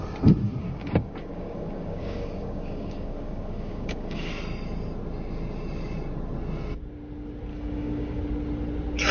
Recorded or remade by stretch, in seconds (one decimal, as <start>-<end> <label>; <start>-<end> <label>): 0.0-0.6 recorded; 0.6-4.3 remade; 4.3-7.5 recorded; 7.5-8.2 remade; 8.2-9.1 recorded